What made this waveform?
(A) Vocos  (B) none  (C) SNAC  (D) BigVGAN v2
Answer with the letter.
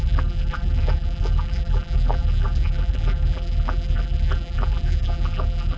D